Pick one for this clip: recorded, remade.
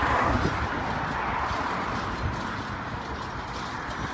recorded